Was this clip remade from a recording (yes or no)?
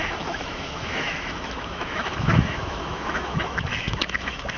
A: yes